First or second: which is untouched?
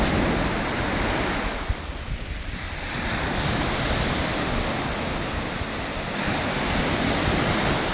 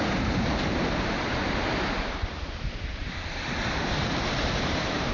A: first